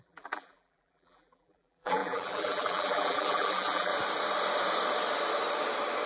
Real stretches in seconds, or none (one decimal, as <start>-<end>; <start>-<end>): 3.9-6.1